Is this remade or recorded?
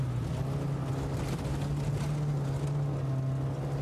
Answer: recorded